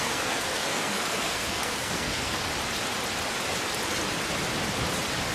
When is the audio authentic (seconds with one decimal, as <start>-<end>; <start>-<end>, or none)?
2.5-5.3